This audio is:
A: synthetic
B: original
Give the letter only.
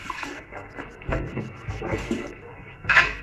A